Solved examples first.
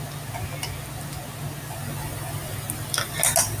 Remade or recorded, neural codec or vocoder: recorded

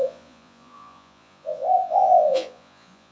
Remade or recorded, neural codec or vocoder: remade, vocoder, Vocos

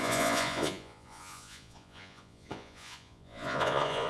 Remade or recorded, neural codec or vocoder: remade, vocoder, Vocos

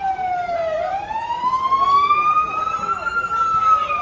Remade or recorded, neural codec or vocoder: recorded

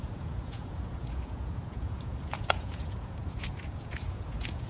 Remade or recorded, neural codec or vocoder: remade, vocoder, Vocos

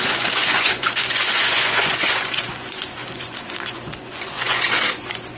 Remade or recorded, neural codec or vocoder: remade, vocoder, Vocos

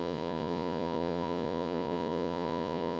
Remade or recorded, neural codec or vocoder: remade, vocoder, Vocos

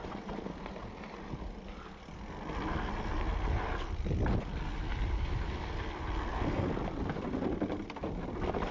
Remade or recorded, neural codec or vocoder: recorded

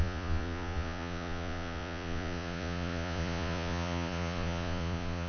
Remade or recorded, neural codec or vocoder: remade, vocoder, Vocos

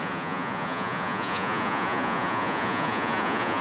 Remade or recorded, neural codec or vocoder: remade, vocoder, Vocos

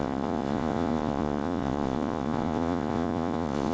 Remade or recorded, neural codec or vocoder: remade, vocoder, Vocos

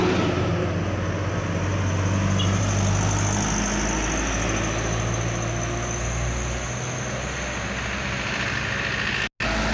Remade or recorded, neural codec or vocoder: recorded